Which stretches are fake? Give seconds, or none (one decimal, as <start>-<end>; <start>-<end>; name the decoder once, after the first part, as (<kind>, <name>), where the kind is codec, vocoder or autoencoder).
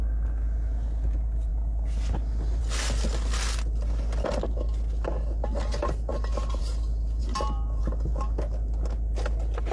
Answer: none